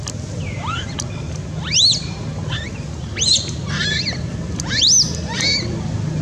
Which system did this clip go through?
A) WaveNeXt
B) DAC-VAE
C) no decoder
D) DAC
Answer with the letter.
C